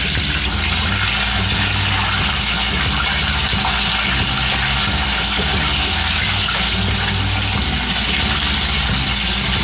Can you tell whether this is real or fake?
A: real